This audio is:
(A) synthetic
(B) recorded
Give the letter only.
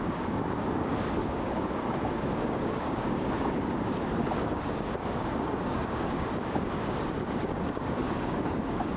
A